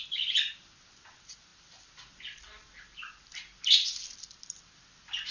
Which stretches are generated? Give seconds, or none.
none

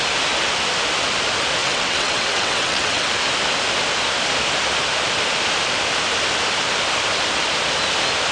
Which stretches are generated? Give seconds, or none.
1.6-3.1 (vocoder, WaveNeXt)

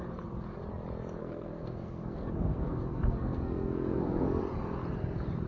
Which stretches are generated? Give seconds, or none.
1.2-4.4 (codec, SNAC)

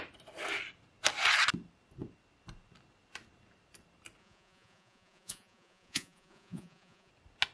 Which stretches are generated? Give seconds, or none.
4.2-7.1 (vocoder, Vocos)

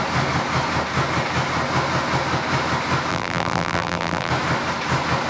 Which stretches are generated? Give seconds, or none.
3.1-4.3 (vocoder, BigVGAN v2)

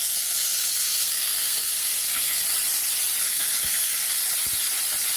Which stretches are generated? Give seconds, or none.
0.0-2.4 (codec, SNAC); 3.2-4.2

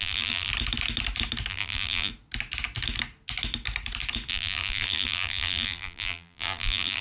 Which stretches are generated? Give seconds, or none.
0.0-0.5 (vocoder, BigVGAN v2); 1.5-2.1; 4.3-7.0

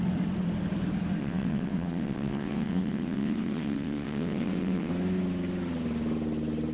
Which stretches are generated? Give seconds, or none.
1.2-4.9 (vocoder, WaveNeXt)